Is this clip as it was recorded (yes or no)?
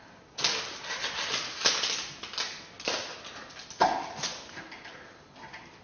yes